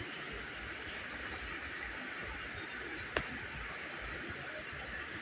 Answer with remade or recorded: recorded